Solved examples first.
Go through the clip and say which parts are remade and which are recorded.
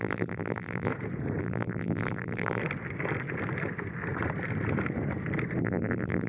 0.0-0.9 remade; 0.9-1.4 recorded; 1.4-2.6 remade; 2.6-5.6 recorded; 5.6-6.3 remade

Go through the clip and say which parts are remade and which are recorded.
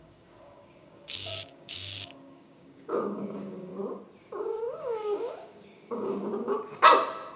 0.0-3.7 remade; 3.7-4.4 recorded; 4.4-6.2 remade; 6.2-7.4 recorded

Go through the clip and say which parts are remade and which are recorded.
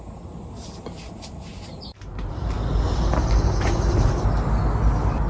0.0-1.7 recorded; 1.7-4.1 remade; 4.1-5.3 recorded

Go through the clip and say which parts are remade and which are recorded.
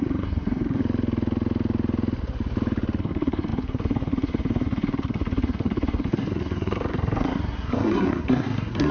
0.0-0.8 remade; 0.8-3.0 recorded; 3.0-8.9 remade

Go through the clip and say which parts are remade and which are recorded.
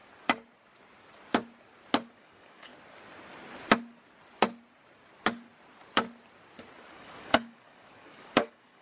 0.0-2.1 recorded; 2.1-2.7 remade; 2.7-6.9 recorded; 6.9-8.8 remade